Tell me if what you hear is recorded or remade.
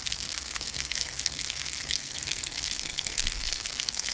remade